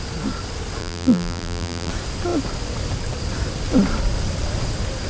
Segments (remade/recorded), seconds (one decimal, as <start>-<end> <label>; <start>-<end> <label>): 0.0-0.8 recorded; 0.8-1.9 remade; 1.9-5.1 recorded